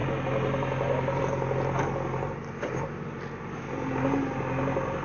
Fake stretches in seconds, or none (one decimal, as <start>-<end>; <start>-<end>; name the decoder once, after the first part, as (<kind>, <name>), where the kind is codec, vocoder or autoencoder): none